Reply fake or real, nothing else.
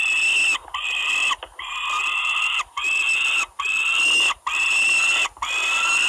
real